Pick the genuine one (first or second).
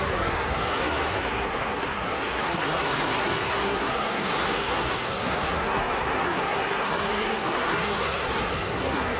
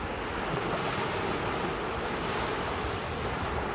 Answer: second